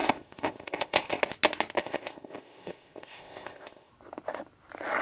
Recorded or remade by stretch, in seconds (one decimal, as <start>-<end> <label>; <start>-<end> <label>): 0.0-1.2 remade; 1.2-1.8 recorded; 1.8-3.9 remade; 3.9-5.0 recorded